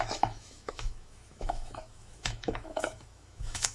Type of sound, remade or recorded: remade